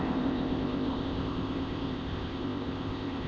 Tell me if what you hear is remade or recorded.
remade